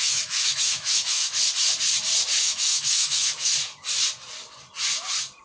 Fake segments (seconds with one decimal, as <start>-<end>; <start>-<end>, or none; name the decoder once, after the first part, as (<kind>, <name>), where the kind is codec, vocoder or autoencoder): 0.0-1.3 (autoencoder, DAC-VAE); 2.4-3.5